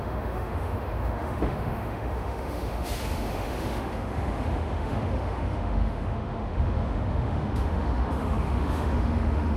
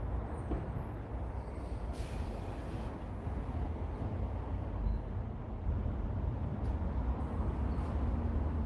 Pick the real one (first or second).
second